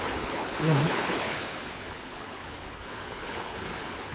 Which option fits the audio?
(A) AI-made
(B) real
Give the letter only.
A